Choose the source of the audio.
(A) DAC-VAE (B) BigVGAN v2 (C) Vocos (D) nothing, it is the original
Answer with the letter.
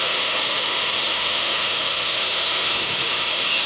A